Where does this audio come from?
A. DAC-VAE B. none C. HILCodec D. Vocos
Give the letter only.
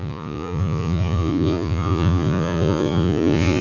D